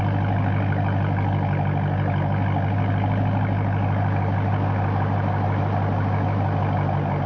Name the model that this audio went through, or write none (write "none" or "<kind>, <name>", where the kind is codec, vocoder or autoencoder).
none